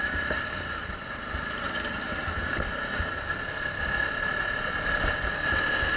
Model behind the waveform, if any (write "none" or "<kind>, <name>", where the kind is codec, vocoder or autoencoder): none